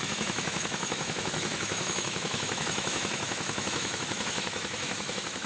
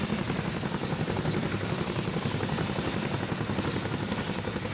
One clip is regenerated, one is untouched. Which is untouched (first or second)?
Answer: second